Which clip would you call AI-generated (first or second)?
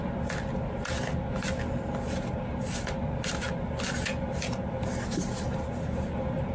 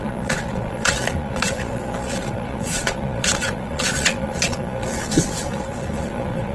second